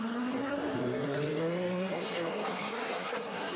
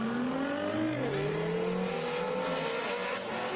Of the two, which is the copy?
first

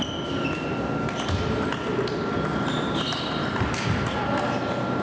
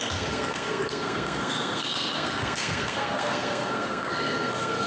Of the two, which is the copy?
second